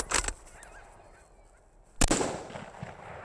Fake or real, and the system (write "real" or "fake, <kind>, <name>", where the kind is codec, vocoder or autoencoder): real